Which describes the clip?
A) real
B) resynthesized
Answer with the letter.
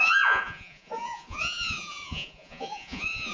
B